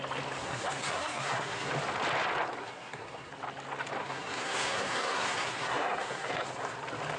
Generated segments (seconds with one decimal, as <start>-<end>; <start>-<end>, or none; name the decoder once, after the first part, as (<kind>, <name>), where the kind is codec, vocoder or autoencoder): 0.4-1.7 (codec, SNAC); 2.6-3.3; 4.0-6.5